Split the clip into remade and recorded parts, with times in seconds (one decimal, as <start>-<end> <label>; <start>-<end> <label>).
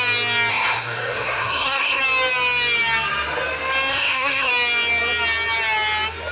0.0-0.5 recorded; 0.5-2.0 remade; 2.0-3.9 recorded; 3.9-4.5 remade; 4.5-6.3 recorded